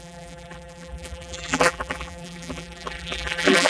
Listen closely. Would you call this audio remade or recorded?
remade